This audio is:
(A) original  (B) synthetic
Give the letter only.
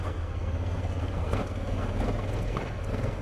B